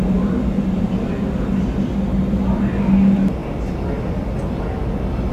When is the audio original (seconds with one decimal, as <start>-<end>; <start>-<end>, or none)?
0.0-5.3